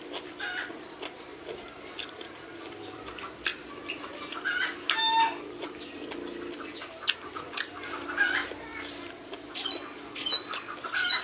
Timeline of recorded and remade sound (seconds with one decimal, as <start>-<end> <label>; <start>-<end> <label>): 0.0-3.5 remade; 3.5-7.3 recorded; 7.3-8.7 remade; 8.7-9.5 recorded; 9.5-11.2 remade